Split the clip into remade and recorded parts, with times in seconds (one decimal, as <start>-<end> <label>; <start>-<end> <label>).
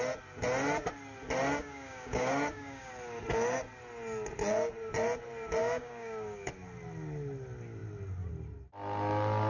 0.0-1.6 recorded; 1.6-2.9 remade; 2.9-5.6 recorded; 5.6-6.5 remade; 6.5-9.5 recorded